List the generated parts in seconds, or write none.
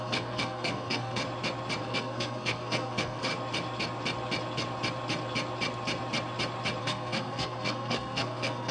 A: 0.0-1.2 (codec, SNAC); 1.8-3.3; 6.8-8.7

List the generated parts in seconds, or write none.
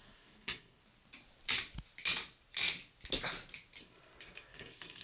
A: 0.0-0.8 (codec, SNAC); 3.8-5.0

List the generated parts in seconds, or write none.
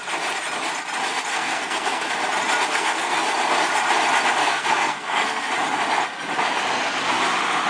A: 1.3-2.1 (codec, SNAC); 2.7-3.2; 4.4-5.5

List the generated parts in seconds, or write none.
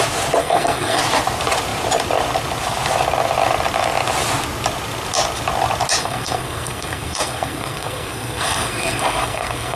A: 0.4-1.0 (codec, SNAC); 6.0-9.8